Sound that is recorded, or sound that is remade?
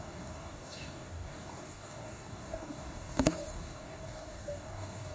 remade